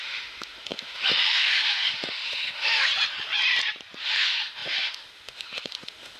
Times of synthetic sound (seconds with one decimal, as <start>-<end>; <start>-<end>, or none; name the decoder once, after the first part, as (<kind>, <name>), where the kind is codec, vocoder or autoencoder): 0.0-2.9 (autoencoder, DAC-VAE); 4.0-6.2